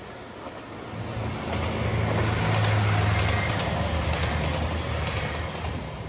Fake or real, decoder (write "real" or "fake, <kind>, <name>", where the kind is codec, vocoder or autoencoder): real